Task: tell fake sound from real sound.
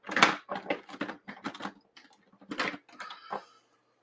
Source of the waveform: real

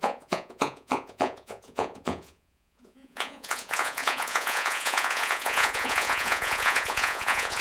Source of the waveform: fake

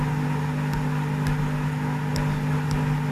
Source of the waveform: real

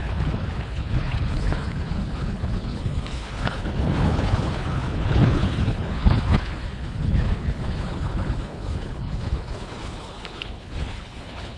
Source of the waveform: fake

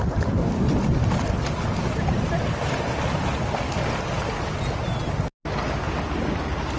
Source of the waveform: real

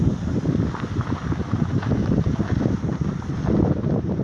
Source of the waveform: real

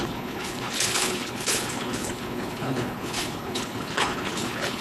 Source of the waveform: fake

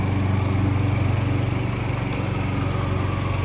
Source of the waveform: real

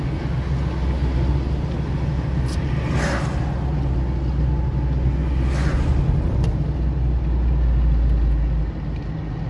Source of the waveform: real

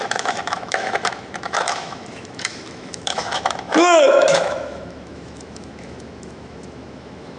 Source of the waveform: fake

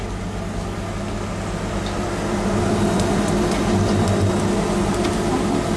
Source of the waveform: real